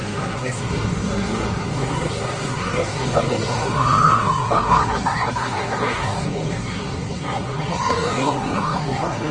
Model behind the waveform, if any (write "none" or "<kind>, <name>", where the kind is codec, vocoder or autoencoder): codec, SNAC